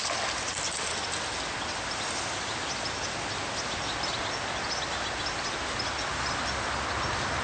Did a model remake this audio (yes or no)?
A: no